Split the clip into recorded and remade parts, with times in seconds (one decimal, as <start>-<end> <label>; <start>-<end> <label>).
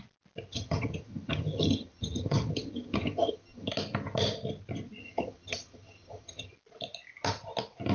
0.0-0.5 recorded; 0.5-3.7 remade; 3.7-5.0 recorded; 5.0-6.5 remade; 6.5-7.9 recorded